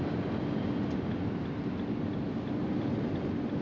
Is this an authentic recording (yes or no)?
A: yes